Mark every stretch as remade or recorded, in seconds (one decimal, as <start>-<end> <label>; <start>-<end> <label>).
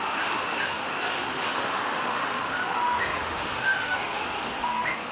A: 0.0-5.1 remade